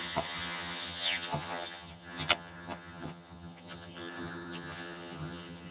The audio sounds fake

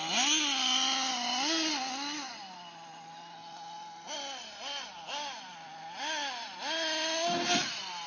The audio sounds real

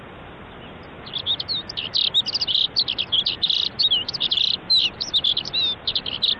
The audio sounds real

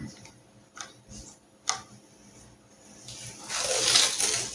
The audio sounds real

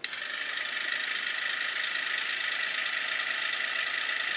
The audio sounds real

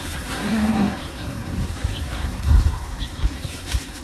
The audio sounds fake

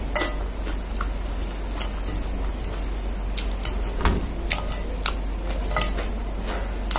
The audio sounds real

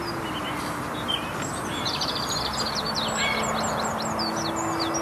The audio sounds real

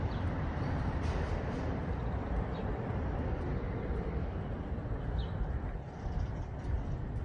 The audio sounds fake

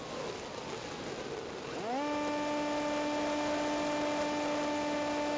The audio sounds real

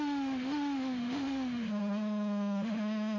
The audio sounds fake